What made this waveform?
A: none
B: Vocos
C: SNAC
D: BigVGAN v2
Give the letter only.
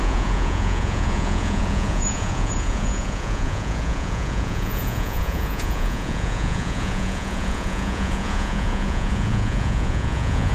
B